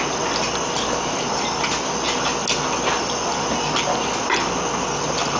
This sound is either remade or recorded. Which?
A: recorded